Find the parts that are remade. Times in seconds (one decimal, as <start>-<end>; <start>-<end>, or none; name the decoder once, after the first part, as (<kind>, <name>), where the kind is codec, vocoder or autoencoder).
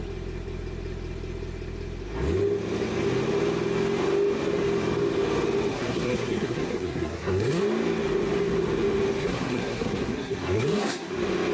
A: 5.7-7.6 (codec, SNAC); 9.2-11.1